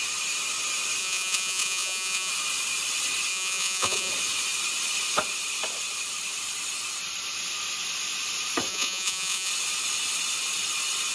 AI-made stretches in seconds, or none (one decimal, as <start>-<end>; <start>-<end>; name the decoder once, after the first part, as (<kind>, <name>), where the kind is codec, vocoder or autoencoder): 1.0-2.3 (vocoder, Vocos); 3.3-4.1; 8.7-9.5